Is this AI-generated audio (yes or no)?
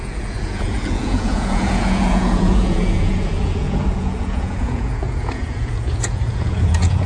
yes